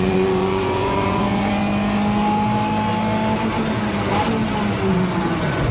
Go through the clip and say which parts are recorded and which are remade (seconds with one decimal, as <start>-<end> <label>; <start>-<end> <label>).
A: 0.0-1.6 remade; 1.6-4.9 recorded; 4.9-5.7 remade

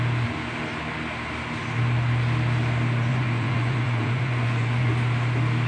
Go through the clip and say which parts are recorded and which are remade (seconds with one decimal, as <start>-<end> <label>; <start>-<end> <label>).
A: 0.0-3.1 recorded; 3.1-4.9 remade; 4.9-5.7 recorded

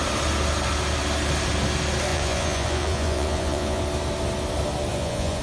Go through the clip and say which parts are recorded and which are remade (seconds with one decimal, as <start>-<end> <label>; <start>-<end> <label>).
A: 0.0-2.1 recorded; 2.1-3.8 remade; 3.8-4.9 recorded; 4.9-5.4 remade

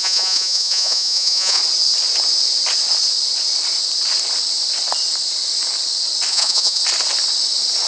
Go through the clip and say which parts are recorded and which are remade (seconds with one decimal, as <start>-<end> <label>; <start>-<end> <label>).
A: 0.0-1.6 remade; 1.6-6.3 recorded; 6.3-6.8 remade; 6.8-7.9 recorded